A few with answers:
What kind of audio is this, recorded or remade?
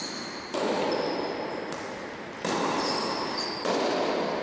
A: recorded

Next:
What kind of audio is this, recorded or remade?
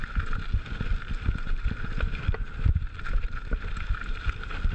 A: recorded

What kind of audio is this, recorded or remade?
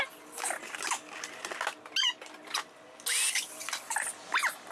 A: recorded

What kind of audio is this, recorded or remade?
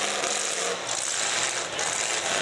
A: recorded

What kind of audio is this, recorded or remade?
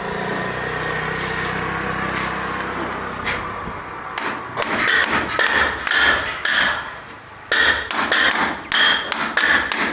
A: recorded